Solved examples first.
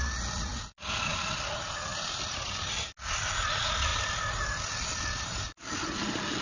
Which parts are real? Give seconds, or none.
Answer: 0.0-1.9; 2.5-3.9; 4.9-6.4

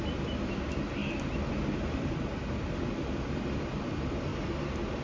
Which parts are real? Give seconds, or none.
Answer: 0.0-1.0; 2.1-5.0

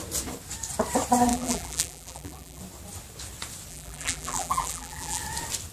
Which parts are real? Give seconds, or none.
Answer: 0.0-1.3; 2.6-3.7; 5.2-5.7

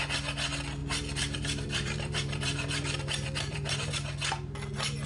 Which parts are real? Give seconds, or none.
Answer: 0.0-0.8; 3.9-5.1

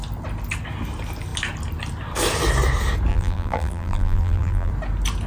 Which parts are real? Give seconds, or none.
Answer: 0.0-3.1; 4.7-5.3

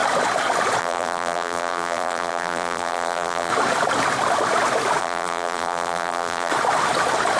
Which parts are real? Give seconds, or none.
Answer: 0.0-0.8; 3.5-5.0; 6.5-7.4